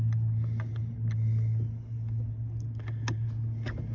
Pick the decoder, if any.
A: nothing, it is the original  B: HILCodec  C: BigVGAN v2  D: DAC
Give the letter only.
A